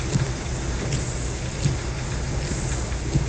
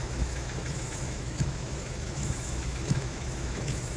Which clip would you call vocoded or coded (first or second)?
second